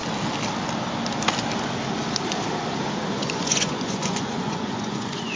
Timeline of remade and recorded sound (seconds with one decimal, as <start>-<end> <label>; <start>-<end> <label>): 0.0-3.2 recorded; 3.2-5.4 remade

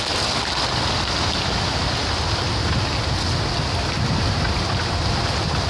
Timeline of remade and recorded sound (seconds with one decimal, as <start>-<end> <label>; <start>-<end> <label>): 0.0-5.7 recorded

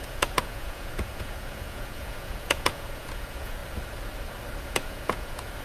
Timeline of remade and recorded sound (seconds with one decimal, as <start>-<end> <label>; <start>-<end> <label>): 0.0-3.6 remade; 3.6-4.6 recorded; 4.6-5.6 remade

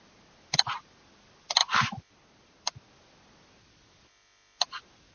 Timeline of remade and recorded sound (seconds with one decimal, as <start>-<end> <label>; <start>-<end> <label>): 0.0-5.1 recorded